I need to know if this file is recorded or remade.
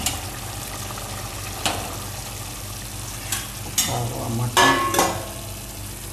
recorded